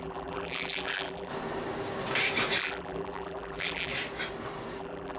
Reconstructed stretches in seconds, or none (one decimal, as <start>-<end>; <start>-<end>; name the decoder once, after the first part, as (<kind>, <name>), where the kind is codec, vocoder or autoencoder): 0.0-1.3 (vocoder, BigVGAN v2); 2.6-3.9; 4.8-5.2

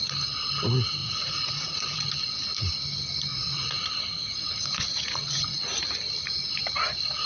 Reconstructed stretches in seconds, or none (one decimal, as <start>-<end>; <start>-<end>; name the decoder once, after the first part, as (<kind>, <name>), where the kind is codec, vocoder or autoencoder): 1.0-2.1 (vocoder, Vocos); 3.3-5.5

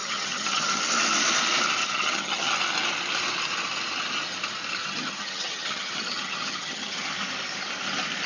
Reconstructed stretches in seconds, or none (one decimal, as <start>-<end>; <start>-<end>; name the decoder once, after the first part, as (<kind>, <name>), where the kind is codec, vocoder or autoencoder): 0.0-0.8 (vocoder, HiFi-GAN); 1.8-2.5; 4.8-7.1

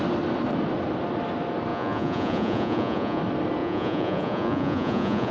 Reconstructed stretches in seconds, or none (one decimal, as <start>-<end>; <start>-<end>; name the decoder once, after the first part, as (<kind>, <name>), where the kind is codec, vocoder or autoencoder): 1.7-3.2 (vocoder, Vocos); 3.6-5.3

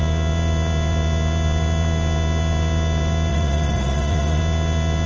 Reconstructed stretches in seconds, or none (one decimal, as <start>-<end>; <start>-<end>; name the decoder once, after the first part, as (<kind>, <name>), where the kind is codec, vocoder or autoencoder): 3.3-4.4 (vocoder, Vocos)

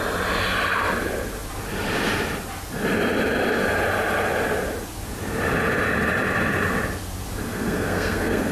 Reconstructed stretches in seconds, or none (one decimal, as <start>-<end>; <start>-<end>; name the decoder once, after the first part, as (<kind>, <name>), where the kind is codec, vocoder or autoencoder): 7.5-8.5 (codec, SNAC)

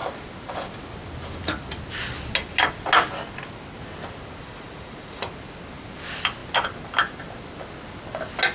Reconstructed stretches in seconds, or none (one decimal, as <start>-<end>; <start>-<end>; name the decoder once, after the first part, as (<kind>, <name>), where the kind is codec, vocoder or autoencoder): 4.4-5.3 (vocoder, Vocos)